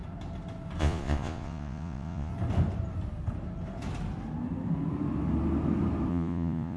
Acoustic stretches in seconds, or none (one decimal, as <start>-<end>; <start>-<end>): 0.0-0.8; 2.3-6.1